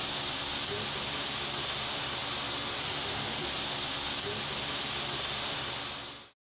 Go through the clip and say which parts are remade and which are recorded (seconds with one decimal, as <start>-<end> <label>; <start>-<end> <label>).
0.0-6.6 recorded